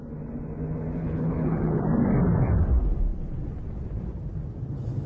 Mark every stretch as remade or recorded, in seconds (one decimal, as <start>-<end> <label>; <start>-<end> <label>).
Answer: 0.0-1.0 recorded; 1.0-1.8 remade; 1.8-5.1 recorded